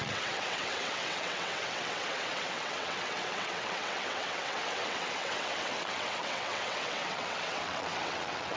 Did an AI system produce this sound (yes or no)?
yes